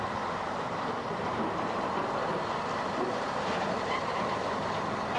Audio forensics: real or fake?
fake